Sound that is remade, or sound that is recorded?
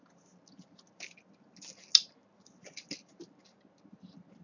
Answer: recorded